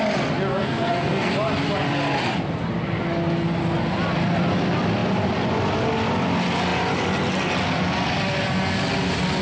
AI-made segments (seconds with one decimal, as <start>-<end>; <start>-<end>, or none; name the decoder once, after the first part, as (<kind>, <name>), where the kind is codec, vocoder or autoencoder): 0.5-1.3 (codec, SNAC)